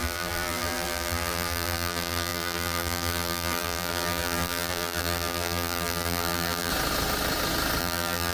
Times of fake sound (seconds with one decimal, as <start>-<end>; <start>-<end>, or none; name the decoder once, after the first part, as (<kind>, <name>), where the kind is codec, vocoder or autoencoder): 0.0-6.7 (vocoder, BigVGAN v2); 7.8-8.3